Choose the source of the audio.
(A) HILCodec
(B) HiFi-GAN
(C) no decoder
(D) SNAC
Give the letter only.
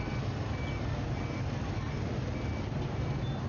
C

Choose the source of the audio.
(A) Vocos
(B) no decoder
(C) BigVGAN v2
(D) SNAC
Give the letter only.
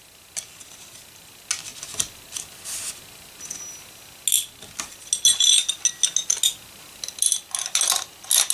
B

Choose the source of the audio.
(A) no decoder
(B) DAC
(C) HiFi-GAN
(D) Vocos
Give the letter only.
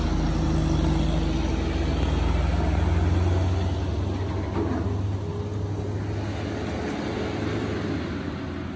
A